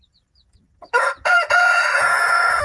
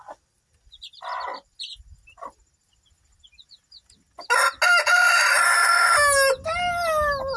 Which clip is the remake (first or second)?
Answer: first